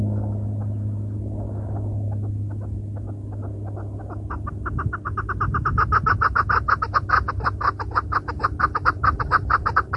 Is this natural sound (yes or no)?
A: yes